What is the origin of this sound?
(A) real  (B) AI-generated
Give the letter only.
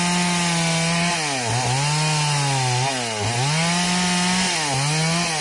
A